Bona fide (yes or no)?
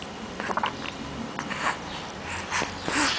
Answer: yes